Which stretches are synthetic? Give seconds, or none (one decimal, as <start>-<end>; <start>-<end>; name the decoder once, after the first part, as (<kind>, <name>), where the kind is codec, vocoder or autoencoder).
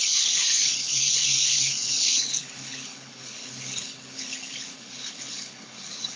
0.0-6.2 (codec, HILCodec)